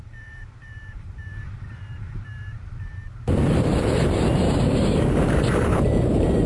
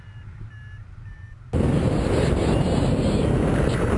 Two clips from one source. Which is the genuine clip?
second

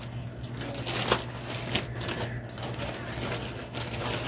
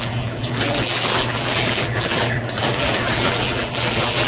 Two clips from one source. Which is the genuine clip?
first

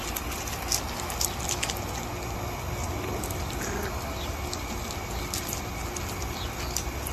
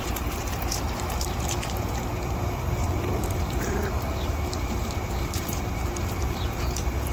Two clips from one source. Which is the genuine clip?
first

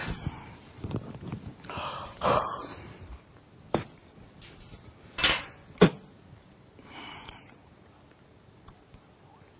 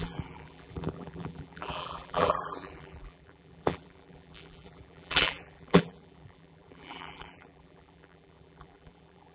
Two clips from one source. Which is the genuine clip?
first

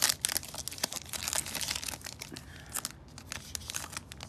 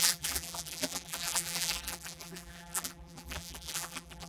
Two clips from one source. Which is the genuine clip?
first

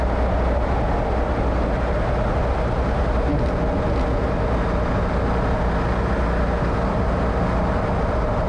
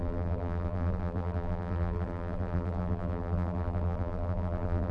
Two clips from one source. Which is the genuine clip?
first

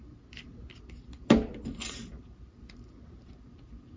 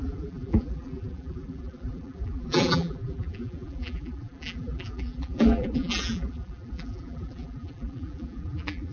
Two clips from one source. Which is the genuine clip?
first